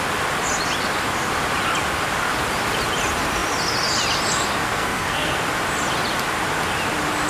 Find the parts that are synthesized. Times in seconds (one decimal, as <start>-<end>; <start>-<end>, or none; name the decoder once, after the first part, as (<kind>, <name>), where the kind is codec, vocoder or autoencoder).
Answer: 4.6-5.4 (codec, SNAC)